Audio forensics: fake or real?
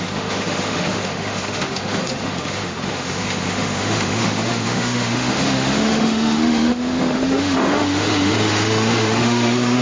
fake